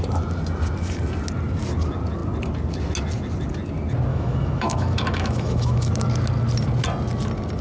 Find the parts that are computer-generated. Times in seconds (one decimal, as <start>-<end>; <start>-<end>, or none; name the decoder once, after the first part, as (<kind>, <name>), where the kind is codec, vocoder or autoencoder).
4.1-5.9 (autoencoder, DAC-VAE)